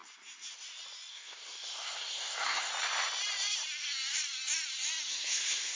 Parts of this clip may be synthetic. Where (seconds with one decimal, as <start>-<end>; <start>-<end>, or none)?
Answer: 1.1-2.7; 5.1-5.8